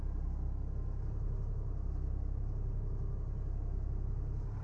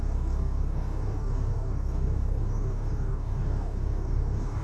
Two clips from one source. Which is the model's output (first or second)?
second